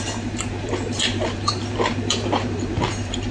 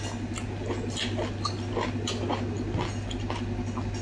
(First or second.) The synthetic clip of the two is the first